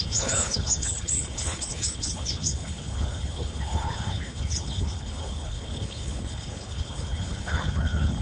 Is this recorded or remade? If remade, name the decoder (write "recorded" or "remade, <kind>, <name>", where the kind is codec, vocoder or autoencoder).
remade, codec, HILCodec